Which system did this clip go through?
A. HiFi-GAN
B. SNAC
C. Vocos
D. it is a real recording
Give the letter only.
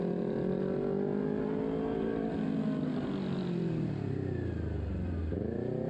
D